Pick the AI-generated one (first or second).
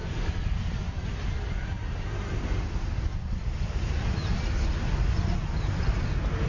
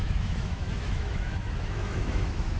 second